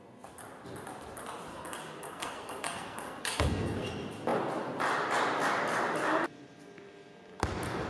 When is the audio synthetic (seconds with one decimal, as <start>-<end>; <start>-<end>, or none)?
1.5-3.9